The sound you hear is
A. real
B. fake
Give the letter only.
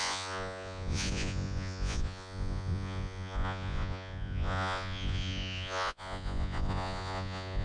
B